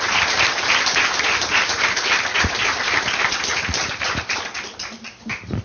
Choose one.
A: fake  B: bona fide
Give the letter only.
B